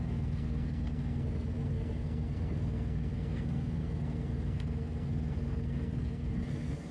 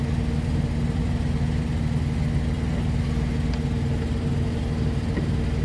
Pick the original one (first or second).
second